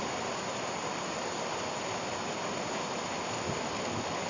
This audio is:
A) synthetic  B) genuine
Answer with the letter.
B